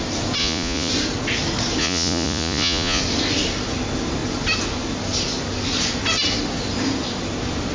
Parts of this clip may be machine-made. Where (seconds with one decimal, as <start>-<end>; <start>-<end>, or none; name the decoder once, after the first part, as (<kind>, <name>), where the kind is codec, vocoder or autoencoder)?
0.4-0.9 (vocoder, Vocos); 1.8-3.0